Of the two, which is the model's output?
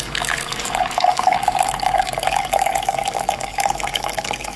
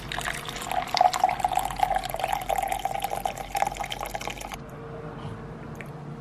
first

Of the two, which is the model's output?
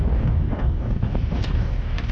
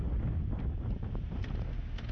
first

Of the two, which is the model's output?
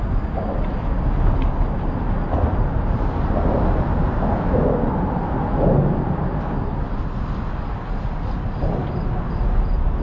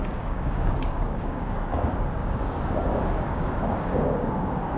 second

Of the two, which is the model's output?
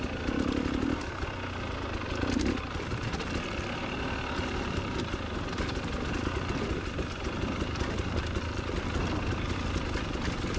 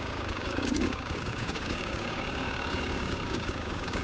second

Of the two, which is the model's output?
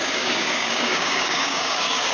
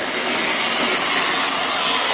first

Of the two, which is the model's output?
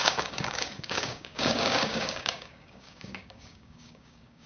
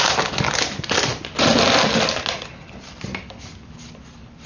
first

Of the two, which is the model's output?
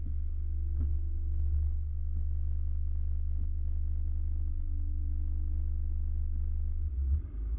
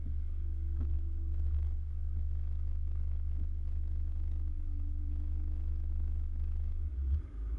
second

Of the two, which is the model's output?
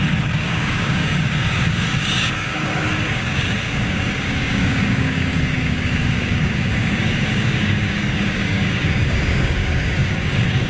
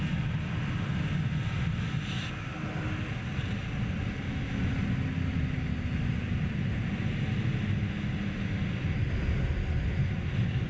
first